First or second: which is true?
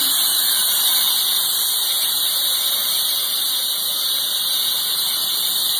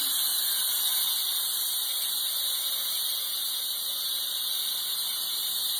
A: second